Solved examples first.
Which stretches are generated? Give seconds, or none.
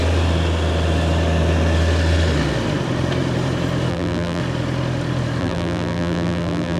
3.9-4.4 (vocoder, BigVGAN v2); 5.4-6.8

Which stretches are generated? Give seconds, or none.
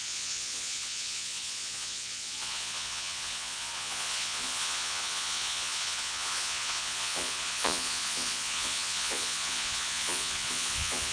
0.0-11.1 (vocoder, Vocos)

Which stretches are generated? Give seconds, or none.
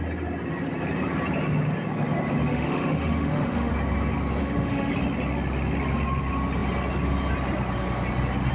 2.5-3.7 (autoencoder, DAC-VAE); 4.4-4.9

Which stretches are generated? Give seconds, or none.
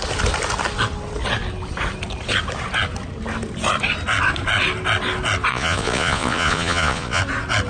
5.5-7.2 (vocoder, Vocos)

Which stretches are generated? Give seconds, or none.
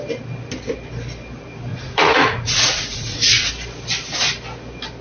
1.7-3.5 (vocoder, Vocos)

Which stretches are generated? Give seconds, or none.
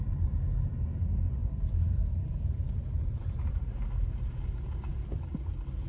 1.5-4.4 (vocoder, BigVGAN v2); 4.9-5.5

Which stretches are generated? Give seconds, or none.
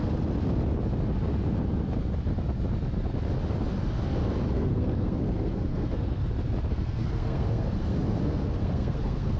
4.5-6.2 (codec, SNAC); 6.7-9.4